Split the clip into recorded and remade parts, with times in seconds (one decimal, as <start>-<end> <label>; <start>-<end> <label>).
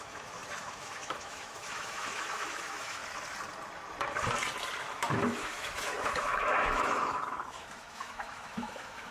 0.0-3.0 remade; 3.0-4.8 recorded; 4.8-9.1 remade